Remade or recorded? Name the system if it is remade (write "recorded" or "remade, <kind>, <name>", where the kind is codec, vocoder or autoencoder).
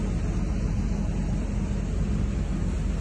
recorded